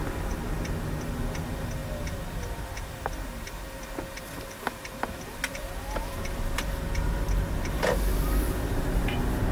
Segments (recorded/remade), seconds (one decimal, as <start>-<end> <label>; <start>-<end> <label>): 0.0-9.5 recorded